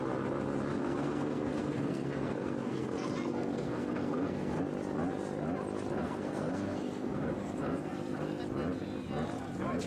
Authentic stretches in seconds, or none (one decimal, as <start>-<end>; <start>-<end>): 0.0-0.7; 4.6-6.0; 8.4-9.9